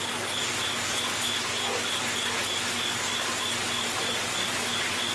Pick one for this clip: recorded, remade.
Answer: recorded